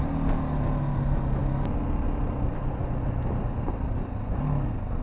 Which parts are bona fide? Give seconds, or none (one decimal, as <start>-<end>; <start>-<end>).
0.0-5.0